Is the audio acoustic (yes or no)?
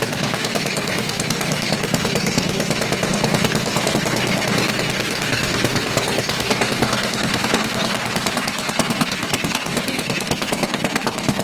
no